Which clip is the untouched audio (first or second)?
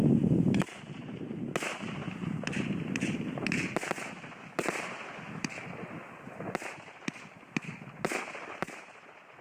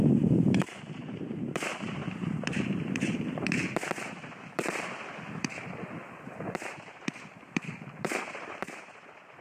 first